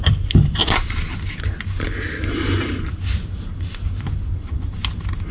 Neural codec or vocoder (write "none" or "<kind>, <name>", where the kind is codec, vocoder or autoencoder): none